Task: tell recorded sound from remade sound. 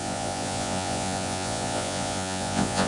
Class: remade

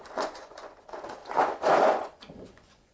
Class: remade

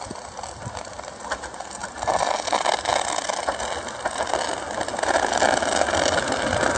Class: recorded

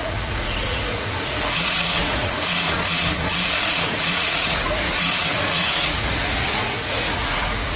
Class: remade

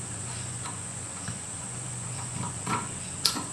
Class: remade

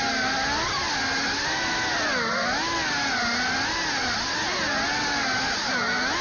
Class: recorded